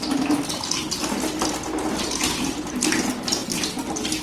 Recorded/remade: recorded